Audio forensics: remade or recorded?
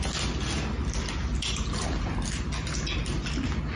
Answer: recorded